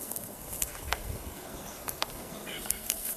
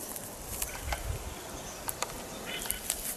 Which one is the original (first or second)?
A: second